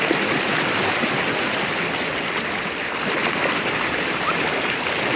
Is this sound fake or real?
real